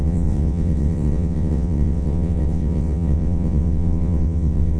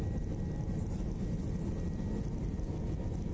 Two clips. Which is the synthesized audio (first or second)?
first